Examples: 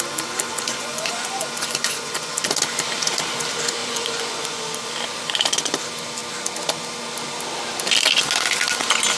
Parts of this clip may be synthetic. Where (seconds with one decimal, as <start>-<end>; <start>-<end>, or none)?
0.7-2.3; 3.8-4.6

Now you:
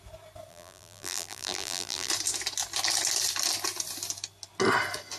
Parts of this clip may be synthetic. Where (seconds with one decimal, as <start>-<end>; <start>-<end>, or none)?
0.5-2.1

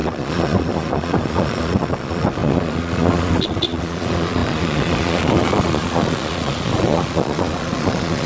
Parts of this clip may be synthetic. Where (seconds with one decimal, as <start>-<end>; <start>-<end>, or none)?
0.0-8.3

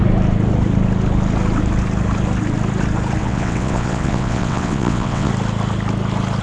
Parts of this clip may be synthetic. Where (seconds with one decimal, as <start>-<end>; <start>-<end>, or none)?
3.2-5.3

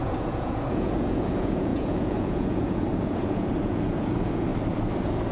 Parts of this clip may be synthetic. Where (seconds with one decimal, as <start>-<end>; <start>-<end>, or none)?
0.0-4.5

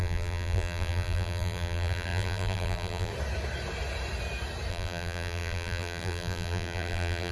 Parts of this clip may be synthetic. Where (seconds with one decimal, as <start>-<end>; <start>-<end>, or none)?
0.0-3.1; 4.7-7.3

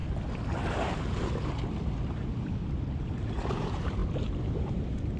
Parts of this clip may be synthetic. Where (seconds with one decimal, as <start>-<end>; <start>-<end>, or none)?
3.1-4.0; 4.6-5.2